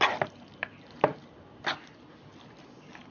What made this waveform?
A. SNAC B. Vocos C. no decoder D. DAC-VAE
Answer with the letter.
C